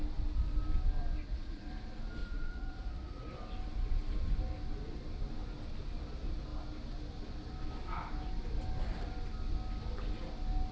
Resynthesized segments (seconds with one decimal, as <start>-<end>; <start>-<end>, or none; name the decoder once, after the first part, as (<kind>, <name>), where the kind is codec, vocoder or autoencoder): 1.2-1.7 (vocoder, Vocos); 2.2-3.3